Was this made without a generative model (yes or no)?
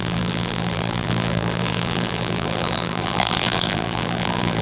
no